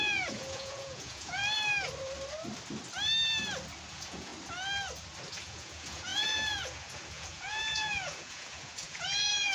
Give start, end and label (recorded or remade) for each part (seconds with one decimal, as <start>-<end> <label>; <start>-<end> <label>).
0.0-1.4 remade; 1.4-3.9 recorded; 3.9-4.3 remade; 4.3-5.3 recorded; 5.3-9.5 remade

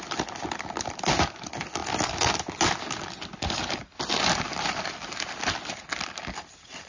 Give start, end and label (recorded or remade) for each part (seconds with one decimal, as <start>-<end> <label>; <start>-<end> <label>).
0.0-6.9 recorded

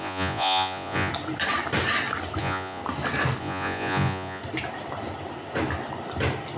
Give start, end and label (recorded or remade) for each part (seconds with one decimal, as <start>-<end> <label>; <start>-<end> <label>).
0.0-1.1 remade; 1.1-2.4 recorded; 2.4-2.8 remade; 2.8-3.4 recorded; 3.4-4.4 remade; 4.4-6.6 recorded

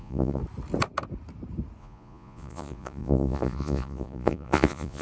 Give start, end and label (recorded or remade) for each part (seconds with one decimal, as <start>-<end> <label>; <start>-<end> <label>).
0.0-0.4 remade; 0.4-1.8 recorded; 1.8-5.0 remade